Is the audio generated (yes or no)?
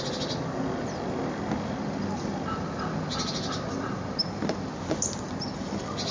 no